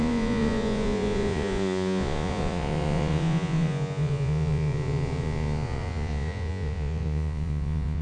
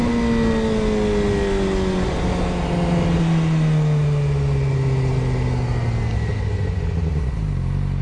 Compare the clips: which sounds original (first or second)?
second